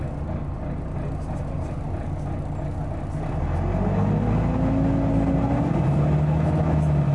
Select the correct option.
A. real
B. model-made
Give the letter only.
A